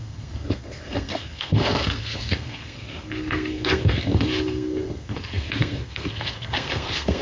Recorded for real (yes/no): no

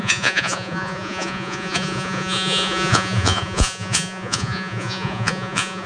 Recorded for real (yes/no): no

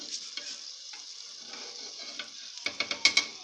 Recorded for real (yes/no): yes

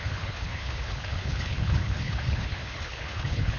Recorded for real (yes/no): no